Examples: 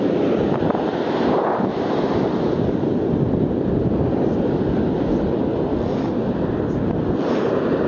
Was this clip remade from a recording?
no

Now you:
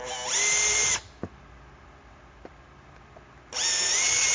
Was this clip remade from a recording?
no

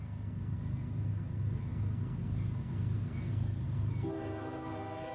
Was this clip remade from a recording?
yes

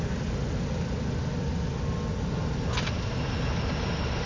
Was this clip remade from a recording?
no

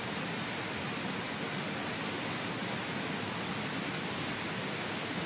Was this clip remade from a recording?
no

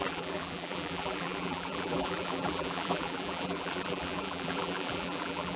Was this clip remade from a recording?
yes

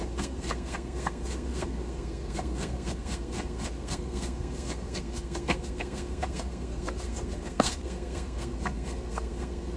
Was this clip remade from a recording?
yes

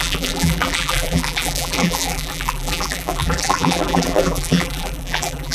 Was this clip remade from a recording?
yes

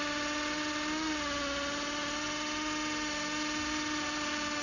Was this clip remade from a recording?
no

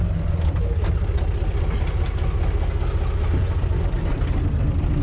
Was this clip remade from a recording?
no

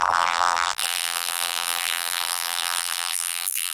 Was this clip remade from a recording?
yes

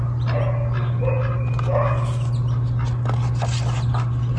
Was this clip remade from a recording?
no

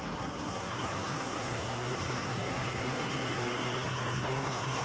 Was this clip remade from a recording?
yes